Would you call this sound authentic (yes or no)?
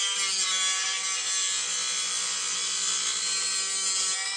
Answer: yes